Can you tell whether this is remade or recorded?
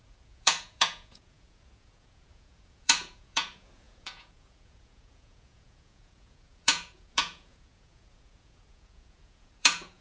remade